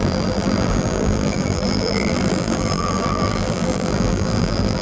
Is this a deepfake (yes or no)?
yes